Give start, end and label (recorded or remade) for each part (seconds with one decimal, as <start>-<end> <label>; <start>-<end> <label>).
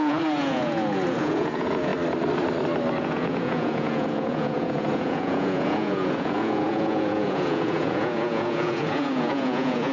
0.0-1.9 remade; 1.9-3.0 recorded; 3.0-9.9 remade